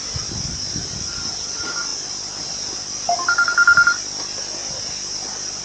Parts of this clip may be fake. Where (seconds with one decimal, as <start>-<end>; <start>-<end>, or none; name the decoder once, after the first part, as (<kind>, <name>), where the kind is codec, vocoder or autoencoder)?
none